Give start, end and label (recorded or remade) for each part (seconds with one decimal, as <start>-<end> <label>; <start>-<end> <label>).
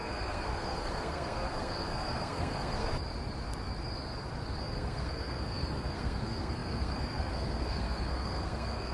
0.0-2.9 remade; 2.9-4.6 recorded; 4.6-8.9 remade